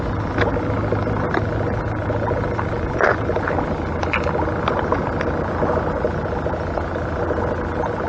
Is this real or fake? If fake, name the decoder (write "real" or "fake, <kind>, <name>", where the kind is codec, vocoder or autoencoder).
real